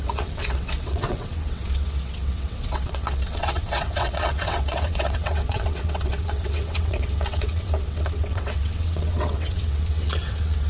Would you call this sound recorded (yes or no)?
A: no